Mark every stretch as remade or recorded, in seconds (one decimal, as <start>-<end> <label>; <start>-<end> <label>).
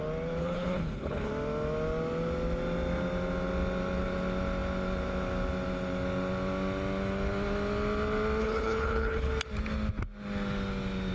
0.0-0.4 recorded; 0.4-1.3 remade; 1.3-8.4 recorded; 8.4-9.3 remade; 9.3-11.1 recorded